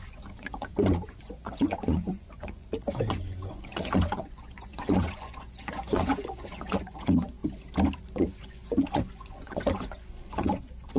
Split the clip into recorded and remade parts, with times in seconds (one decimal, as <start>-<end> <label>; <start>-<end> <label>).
0.0-7.4 remade; 7.4-8.0 recorded; 8.0-11.0 remade